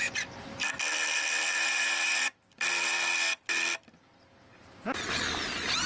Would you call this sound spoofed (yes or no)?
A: no